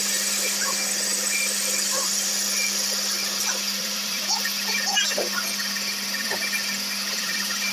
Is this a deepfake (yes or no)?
yes